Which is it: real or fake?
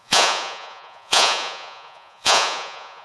fake